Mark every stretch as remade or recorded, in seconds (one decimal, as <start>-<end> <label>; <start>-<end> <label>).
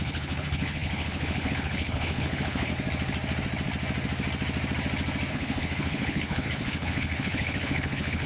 0.0-2.7 remade; 2.7-5.3 recorded; 5.3-8.3 remade